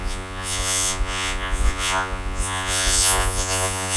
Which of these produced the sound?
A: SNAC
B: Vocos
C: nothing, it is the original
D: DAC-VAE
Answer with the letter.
B